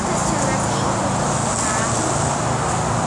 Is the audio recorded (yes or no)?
yes